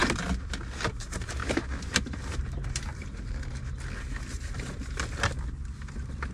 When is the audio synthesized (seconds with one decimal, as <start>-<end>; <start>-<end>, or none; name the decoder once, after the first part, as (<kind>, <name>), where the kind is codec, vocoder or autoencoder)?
1.4-3.6 (vocoder, BigVGAN v2)